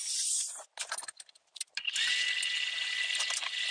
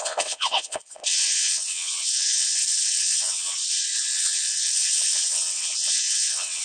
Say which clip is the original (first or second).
first